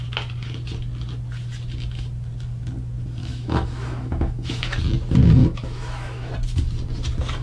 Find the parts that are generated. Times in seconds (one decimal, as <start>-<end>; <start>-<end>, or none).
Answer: 3.2-4.8; 5.4-6.3